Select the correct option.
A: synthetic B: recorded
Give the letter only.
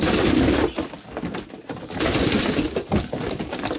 B